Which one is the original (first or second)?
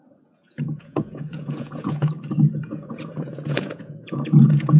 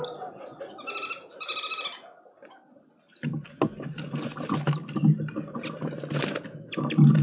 second